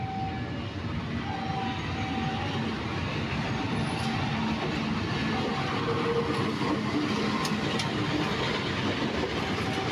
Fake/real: real